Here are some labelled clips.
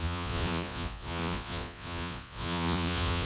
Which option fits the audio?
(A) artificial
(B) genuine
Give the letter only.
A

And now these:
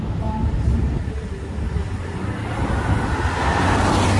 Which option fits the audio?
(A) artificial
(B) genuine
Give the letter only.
B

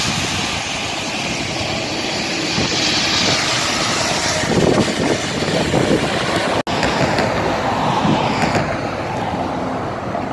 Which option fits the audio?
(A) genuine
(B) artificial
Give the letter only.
A